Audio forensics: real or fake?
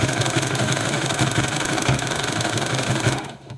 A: fake